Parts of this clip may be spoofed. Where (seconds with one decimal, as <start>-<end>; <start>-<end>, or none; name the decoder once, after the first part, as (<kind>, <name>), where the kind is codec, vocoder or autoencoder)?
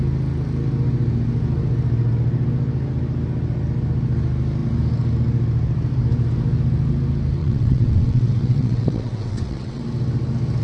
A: 7.4-9.8 (vocoder, WaveNeXt)